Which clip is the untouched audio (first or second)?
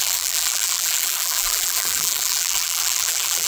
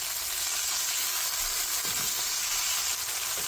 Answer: second